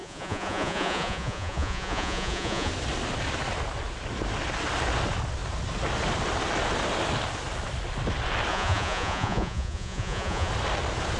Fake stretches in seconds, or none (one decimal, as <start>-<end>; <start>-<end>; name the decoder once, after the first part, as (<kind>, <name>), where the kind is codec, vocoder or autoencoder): 0.0-2.7 (vocoder, Vocos); 8.5-10.5